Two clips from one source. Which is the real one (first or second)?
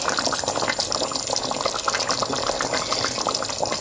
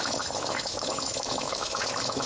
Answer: first